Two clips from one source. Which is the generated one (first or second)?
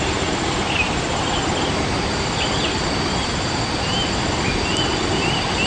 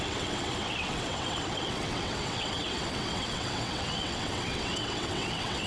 second